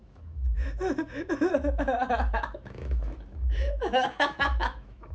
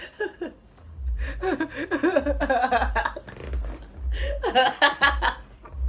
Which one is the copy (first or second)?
first